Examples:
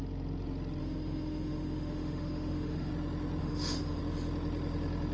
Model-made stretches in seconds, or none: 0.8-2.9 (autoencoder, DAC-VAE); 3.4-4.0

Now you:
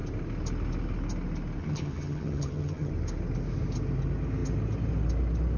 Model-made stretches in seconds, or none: 1.6-2.9 (vocoder, HiFi-GAN)

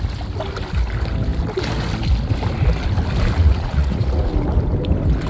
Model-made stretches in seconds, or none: 3.4-4.3 (vocoder, Vocos)

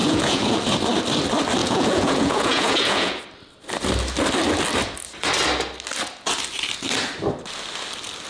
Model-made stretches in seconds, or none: 0.0-0.6 (vocoder, Vocos); 1.6-3.2